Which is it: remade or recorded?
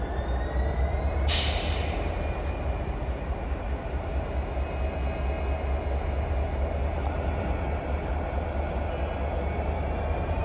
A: recorded